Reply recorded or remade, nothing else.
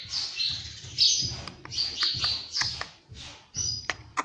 recorded